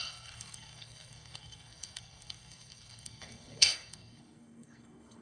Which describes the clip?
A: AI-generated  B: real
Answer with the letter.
A